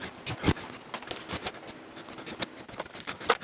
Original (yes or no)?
yes